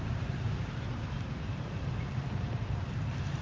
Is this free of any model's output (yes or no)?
no